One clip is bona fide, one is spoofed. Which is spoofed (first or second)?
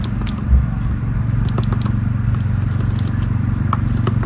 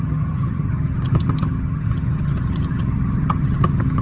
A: second